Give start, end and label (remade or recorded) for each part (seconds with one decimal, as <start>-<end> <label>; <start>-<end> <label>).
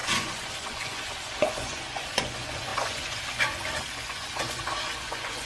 0.0-5.5 remade